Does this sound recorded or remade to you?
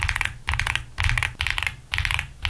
recorded